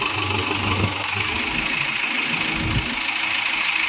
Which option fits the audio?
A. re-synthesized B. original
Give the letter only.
B